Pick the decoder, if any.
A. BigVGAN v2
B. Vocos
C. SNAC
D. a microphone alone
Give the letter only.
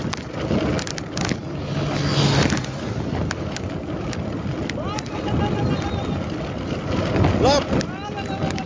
D